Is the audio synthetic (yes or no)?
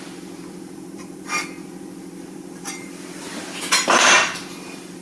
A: yes